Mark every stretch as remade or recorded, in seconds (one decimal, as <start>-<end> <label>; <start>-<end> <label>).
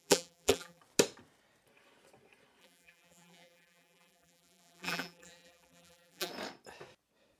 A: 0.0-0.8 remade; 0.8-2.6 recorded; 2.6-6.3 remade; 6.3-7.4 recorded